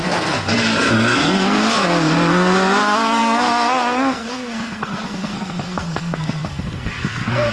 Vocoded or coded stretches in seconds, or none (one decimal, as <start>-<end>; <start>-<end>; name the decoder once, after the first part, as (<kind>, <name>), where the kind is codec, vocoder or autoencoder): 0.0-7.5 (codec, SNAC)